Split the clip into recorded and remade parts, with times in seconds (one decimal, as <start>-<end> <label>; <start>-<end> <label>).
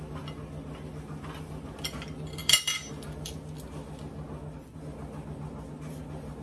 0.0-6.4 recorded